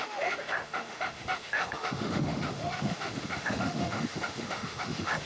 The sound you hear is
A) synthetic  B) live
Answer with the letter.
A